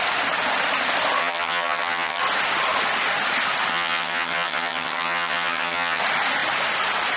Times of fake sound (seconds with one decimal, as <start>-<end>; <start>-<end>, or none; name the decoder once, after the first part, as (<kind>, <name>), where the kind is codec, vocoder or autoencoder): 1.2-2.2 (vocoder, HiFi-GAN); 3.7-6.0